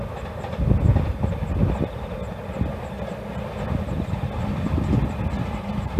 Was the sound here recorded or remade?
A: recorded